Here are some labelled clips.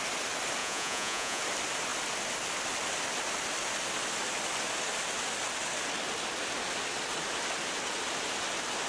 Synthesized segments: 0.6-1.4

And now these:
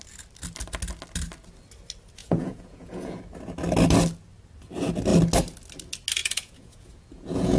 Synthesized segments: 2.2-3.2; 6.2-7.6

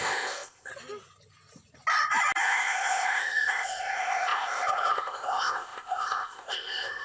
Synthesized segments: 0.0-0.7; 2.4-7.0

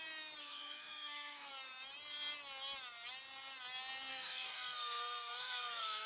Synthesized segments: 0.4-1.5; 4.1-6.1

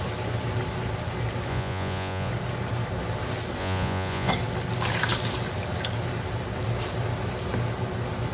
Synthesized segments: 1.5-2.3; 3.6-4.3

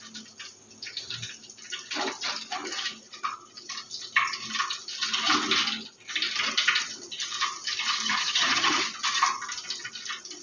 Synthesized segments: 8.1-8.8

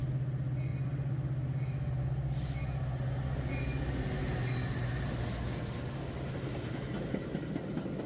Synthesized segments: none